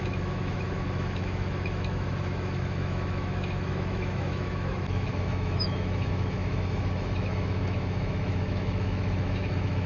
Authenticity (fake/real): fake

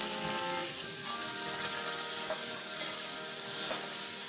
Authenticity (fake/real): real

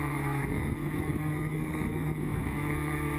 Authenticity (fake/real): fake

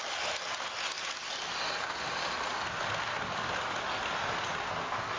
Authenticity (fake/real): real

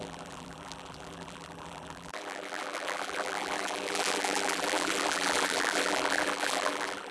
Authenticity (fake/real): fake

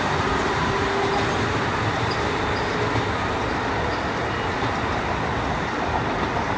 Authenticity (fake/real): real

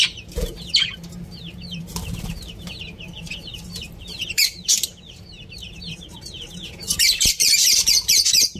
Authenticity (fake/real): fake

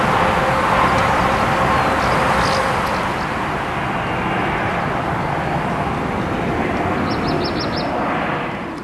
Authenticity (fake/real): real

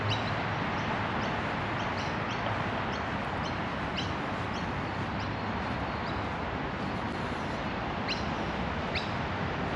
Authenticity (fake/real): real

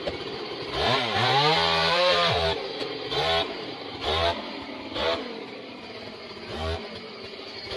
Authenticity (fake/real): fake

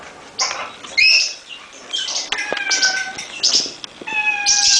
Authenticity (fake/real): real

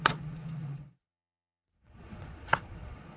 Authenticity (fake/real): fake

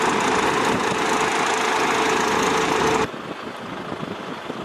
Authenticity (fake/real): real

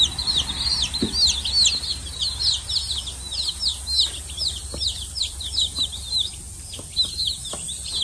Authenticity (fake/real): real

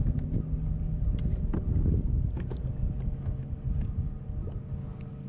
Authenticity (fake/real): real